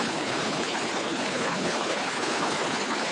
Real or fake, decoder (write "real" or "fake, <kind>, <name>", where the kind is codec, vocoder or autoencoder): fake, codec, HILCodec